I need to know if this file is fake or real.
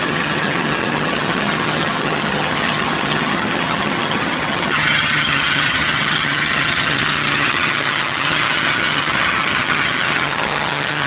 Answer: fake